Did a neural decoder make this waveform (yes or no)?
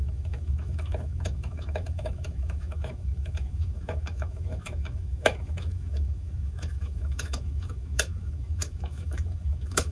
yes